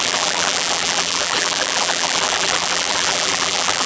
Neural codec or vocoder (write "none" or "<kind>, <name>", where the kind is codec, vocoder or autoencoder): vocoder, BigVGAN v2